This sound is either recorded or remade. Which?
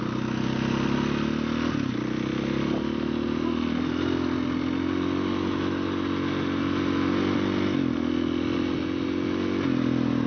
recorded